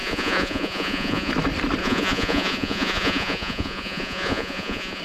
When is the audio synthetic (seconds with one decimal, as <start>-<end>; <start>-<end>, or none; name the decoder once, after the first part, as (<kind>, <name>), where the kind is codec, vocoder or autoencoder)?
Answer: 0.0-1.3 (vocoder, Vocos); 1.8-5.0